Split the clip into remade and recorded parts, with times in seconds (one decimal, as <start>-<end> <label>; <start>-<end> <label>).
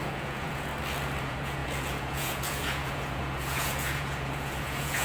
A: 0.0-0.7 remade; 0.7-1.2 recorded; 1.2-5.0 remade